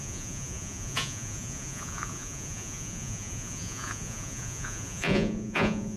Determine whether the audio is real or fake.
fake